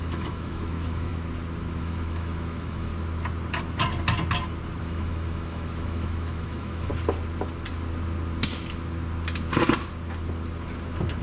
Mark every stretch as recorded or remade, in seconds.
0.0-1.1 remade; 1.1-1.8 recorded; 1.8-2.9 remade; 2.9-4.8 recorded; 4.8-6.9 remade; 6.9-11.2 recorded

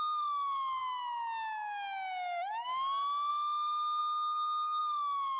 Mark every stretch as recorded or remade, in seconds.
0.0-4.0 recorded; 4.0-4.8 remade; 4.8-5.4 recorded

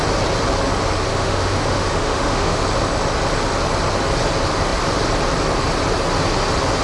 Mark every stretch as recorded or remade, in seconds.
0.0-1.1 recorded; 1.1-2.6 remade; 2.6-6.8 recorded

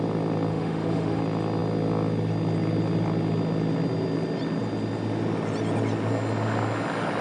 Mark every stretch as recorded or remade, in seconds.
0.0-0.5 recorded; 0.5-1.2 remade; 1.2-7.2 recorded